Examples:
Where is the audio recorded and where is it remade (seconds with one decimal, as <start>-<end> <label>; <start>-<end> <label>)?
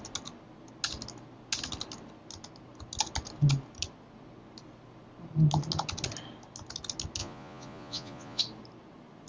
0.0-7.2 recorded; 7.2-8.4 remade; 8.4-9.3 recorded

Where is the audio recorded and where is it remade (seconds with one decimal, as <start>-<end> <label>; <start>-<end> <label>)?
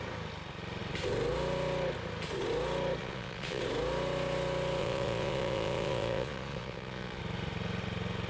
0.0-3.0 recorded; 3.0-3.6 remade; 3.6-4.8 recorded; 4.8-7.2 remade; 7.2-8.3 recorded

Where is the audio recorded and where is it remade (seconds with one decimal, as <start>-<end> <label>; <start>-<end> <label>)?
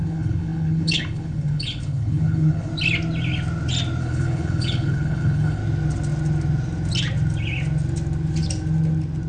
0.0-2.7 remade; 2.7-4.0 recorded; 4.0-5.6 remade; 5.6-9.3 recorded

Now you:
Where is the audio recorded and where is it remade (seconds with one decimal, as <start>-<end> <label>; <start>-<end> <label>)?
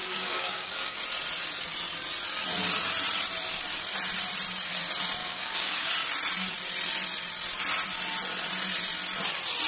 0.0-1.0 remade; 1.0-5.2 recorded; 5.2-5.9 remade; 5.9-9.7 recorded